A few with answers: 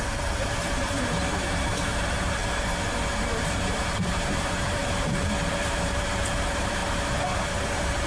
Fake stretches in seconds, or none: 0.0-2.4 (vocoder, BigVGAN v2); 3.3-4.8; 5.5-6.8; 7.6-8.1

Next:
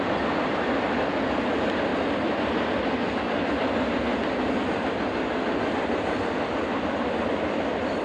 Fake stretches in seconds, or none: 1.9-3.2 (vocoder, BigVGAN v2); 4.1-4.9

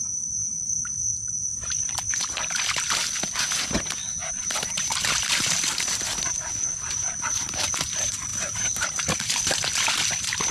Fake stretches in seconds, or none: 1.5-2.1 (vocoder, BigVGAN v2); 4.2-7.7; 8.3-9.5

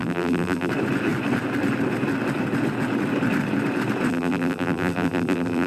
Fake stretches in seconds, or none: 0.0-0.7 (vocoder, BigVGAN v2); 4.1-5.7

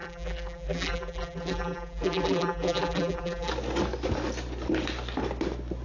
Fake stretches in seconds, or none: 0.0-3.5 (vocoder, BigVGAN v2)

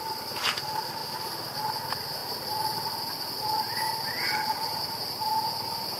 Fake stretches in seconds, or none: none

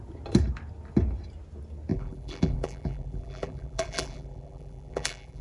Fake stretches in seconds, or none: 1.9-5.4 (vocoder, BigVGAN v2)

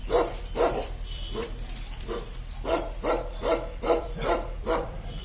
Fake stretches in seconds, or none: 0.0-5.2 (vocoder, BigVGAN v2)